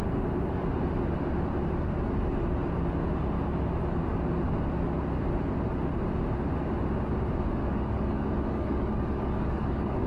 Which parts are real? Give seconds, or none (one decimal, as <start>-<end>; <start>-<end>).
0.0-7.6